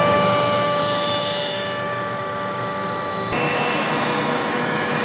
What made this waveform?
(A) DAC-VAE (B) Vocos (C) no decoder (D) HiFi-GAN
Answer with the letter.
A